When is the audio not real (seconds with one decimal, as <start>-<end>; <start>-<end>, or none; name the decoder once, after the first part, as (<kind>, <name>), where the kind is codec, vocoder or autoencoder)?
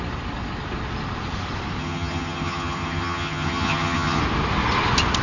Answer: 1.8-4.2 (vocoder, HiFi-GAN)